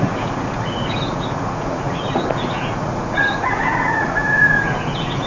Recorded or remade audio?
remade